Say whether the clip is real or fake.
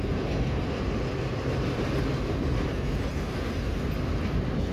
real